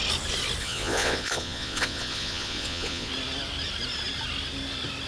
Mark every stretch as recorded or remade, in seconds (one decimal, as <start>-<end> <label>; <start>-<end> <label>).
0.0-0.6 recorded; 0.6-3.1 remade; 3.1-5.1 recorded